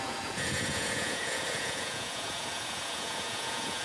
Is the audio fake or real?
fake